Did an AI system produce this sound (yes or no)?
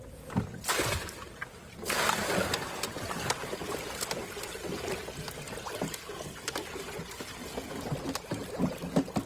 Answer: no